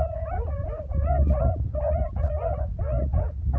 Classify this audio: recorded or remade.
remade